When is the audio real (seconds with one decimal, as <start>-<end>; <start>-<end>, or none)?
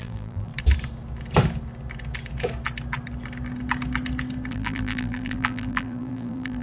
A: 0.5-4.5